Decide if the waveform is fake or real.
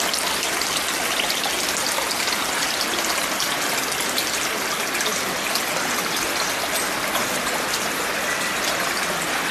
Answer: real